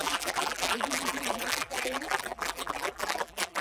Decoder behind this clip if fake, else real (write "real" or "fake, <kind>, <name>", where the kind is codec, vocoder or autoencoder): fake, vocoder, BigVGAN v2